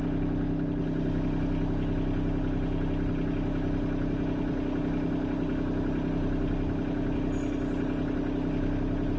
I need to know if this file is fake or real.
real